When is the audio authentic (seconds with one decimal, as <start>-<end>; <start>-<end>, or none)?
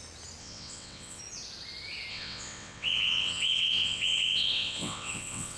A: 0.0-0.4; 1.2-2.1